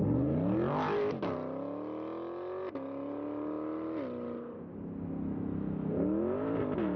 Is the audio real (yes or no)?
yes